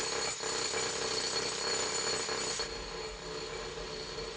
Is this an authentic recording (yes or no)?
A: yes